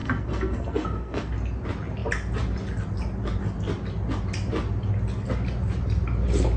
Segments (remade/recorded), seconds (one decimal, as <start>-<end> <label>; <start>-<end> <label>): 0.0-1.3 remade; 1.3-6.6 recorded